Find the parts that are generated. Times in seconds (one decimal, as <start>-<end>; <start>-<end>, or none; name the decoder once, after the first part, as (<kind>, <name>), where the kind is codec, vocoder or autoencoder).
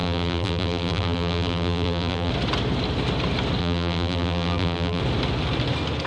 0.0-2.3 (vocoder, BigVGAN v2); 3.6-5.0